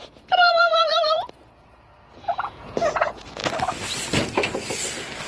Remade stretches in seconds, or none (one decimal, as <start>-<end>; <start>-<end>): 0.0-3.4